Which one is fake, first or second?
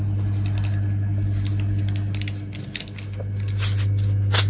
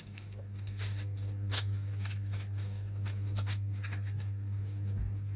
second